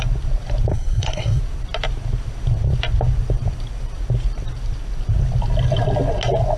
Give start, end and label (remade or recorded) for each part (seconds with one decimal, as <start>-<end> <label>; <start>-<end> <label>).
0.0-0.7 recorded; 0.7-1.4 remade; 1.4-6.6 recorded